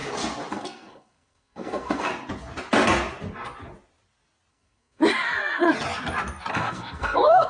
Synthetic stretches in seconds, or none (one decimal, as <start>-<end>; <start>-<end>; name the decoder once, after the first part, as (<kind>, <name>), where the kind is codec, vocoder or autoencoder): 0.5-2.1 (codec, SNAC); 4.5-5.0; 6.5-7.5